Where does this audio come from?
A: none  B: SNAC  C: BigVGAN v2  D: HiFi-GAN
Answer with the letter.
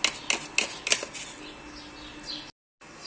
A